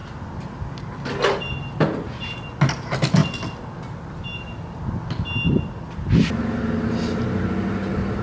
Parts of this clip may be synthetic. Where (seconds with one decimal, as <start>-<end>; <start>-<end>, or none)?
none